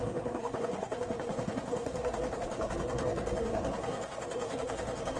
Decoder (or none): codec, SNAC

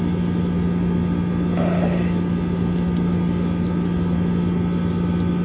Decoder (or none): none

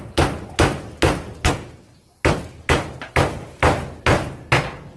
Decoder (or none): none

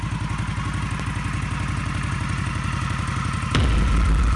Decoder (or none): none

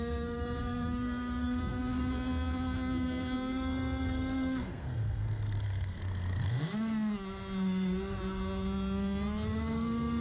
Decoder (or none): codec, SNAC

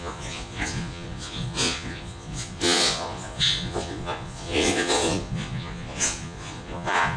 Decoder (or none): vocoder, Vocos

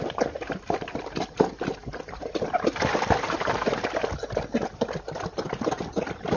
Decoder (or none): vocoder, BigVGAN v2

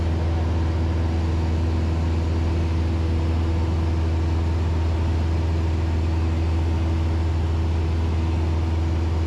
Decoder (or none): none